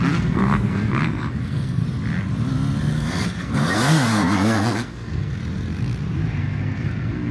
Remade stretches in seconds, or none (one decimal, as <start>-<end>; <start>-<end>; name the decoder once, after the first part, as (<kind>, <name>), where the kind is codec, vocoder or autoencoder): 0.0-1.8 (codec, SNAC); 2.9-5.4; 6.4-7.3